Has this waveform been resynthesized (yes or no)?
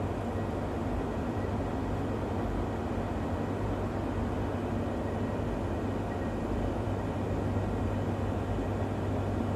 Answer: no